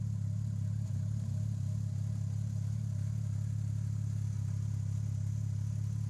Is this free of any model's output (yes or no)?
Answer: yes